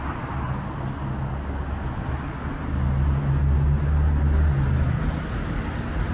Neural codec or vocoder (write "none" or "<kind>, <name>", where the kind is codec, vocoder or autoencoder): none